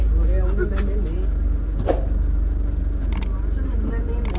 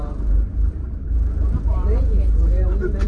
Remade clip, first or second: second